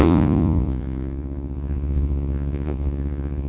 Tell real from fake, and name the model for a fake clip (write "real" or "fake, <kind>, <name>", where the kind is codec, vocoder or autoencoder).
fake, vocoder, Vocos